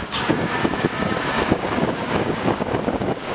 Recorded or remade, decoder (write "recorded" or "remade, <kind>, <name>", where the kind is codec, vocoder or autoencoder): remade, codec, DAC